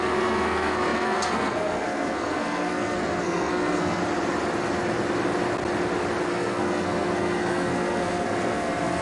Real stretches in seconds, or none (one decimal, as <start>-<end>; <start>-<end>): 4.0-6.3